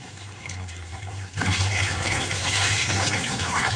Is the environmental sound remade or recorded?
remade